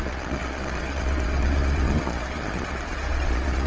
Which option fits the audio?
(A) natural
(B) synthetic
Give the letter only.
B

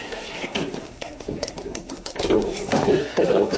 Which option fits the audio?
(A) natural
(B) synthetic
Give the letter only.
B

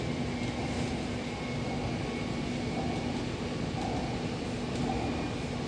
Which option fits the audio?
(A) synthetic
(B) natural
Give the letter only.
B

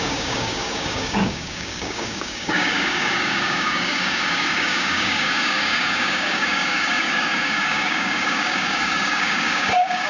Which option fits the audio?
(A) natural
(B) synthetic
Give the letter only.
B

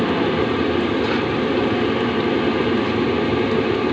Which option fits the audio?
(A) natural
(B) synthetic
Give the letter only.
A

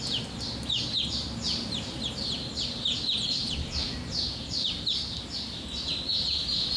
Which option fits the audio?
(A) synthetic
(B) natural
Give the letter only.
B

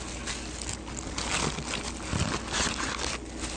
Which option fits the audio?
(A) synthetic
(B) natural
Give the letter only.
B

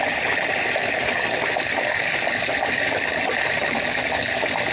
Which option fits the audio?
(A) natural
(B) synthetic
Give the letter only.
A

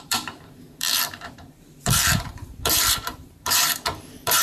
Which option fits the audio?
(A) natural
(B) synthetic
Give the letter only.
B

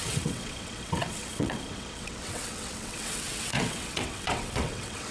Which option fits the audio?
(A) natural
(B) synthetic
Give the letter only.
B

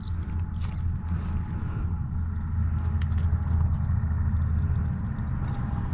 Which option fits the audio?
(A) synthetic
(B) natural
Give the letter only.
B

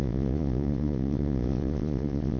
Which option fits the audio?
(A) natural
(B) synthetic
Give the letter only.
B